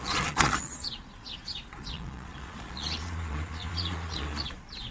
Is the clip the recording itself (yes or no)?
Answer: no